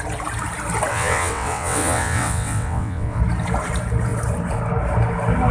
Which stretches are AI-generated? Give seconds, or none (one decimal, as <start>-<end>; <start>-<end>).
0.9-3.2